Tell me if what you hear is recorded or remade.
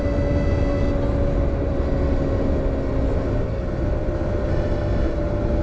recorded